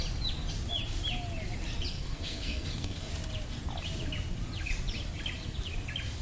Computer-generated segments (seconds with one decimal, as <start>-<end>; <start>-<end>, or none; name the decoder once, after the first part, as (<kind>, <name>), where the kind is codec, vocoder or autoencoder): 1.9-3.1 (codec, SNAC)